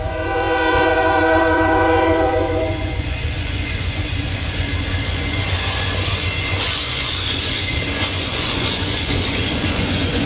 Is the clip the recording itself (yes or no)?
no